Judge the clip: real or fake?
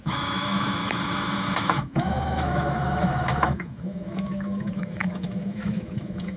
fake